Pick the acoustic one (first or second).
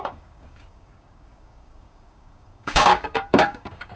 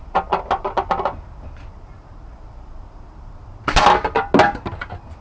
second